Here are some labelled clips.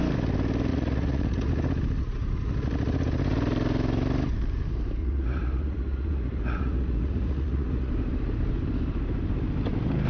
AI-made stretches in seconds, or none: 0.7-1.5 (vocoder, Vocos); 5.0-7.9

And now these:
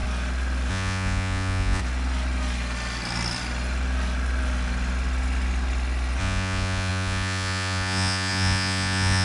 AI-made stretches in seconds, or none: 0.7-1.8 (vocoder, Vocos); 6.2-9.2

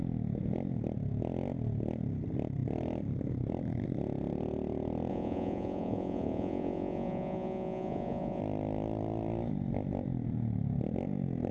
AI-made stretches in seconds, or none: 5.1-8.4 (vocoder, Vocos)

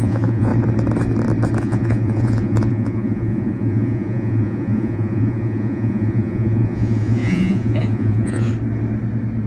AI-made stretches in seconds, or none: 0.0-0.5 (vocoder, Vocos); 1.6-8.5